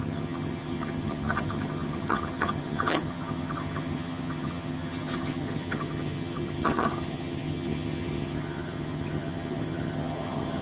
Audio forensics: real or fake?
fake